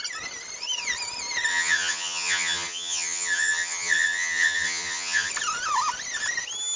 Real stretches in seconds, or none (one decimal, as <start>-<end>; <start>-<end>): 0.0-1.5; 5.3-6.8